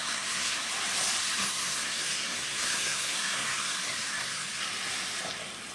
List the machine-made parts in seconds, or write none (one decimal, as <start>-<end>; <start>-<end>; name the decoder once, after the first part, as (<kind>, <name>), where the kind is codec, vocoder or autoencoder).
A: 0.0-0.7 (codec, SNAC); 1.2-4.6